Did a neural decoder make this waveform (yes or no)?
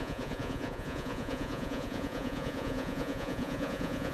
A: yes